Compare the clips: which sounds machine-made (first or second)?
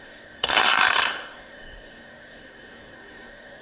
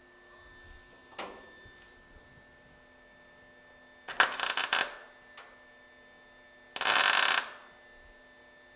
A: first